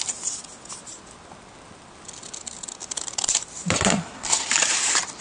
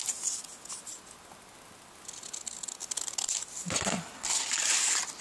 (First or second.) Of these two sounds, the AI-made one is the first